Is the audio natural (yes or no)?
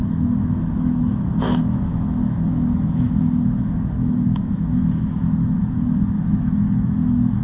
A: no